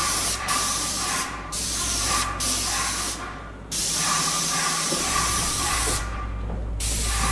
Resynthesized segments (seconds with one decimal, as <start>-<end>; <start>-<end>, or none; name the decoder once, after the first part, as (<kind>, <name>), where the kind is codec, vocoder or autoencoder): 0.0-2.1 (vocoder, BigVGAN v2); 3.8-6.0